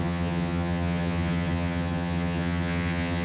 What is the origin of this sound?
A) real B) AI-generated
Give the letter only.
B